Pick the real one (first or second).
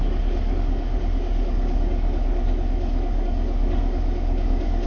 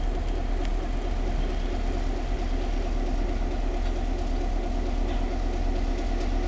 second